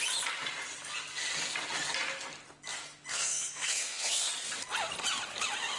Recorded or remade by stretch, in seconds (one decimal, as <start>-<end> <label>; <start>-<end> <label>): 0.0-3.1 recorded; 3.1-4.3 remade; 4.3-5.8 recorded